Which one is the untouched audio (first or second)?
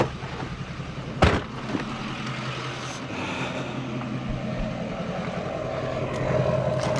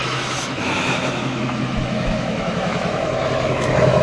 first